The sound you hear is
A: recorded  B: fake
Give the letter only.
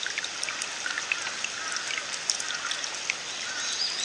A